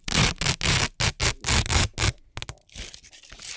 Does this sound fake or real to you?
real